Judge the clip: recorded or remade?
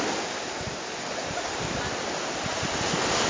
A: recorded